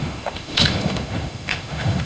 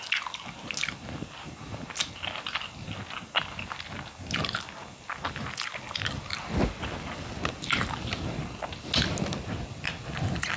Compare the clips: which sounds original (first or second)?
second